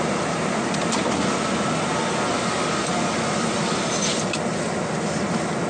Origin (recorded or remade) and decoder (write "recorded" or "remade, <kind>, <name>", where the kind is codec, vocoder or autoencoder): recorded